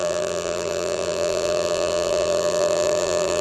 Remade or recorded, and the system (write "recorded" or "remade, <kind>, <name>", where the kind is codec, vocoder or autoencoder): remade, vocoder, BigVGAN v2